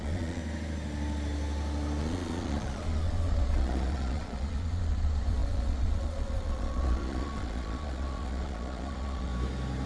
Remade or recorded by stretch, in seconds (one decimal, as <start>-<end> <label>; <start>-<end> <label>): 0.0-0.4 remade; 0.4-2.0 recorded; 2.0-9.3 remade; 9.3-9.9 recorded